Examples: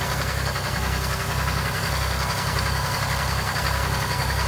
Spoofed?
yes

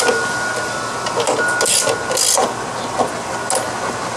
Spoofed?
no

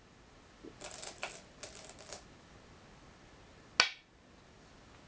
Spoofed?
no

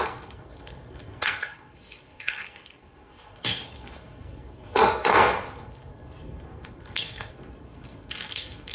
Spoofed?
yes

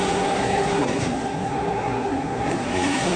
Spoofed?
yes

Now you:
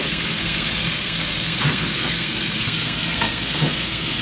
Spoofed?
yes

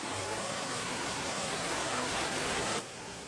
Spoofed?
yes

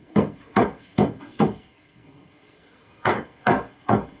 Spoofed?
yes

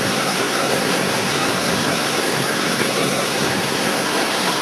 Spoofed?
yes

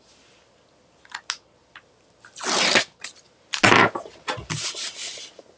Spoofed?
no